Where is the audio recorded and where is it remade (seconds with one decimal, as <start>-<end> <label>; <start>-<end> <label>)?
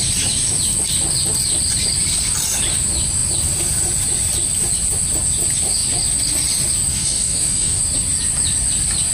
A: 0.0-6.9 recorded; 6.9-7.8 remade; 7.8-9.1 recorded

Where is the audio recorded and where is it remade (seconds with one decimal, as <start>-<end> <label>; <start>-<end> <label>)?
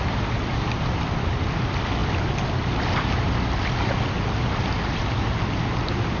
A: 0.0-6.2 recorded